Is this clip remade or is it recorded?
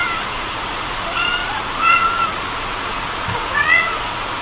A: remade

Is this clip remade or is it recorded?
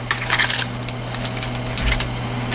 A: recorded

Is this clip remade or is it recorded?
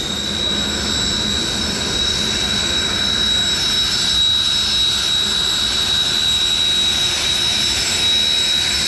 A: recorded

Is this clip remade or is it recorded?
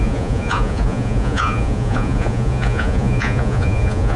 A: remade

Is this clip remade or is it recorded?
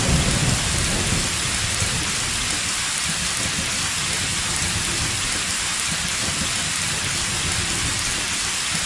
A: recorded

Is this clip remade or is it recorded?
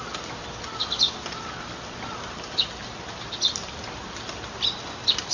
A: recorded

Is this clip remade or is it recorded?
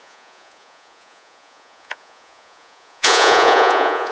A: remade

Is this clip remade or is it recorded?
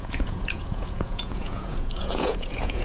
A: remade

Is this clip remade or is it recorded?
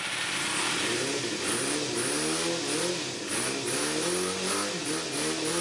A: recorded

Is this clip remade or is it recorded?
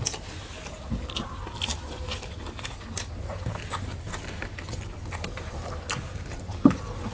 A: recorded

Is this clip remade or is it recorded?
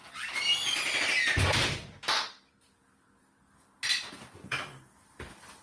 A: recorded